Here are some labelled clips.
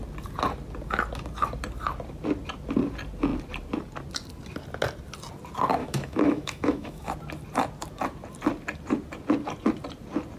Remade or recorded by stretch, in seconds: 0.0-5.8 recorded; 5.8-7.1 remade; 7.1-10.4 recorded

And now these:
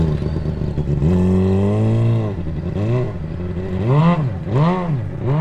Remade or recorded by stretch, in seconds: 0.0-5.4 recorded

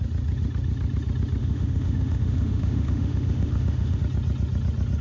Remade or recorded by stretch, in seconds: 0.0-1.4 recorded; 1.4-4.0 remade; 4.0-5.0 recorded

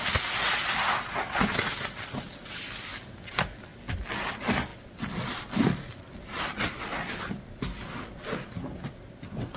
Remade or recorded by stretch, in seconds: 0.0-9.6 recorded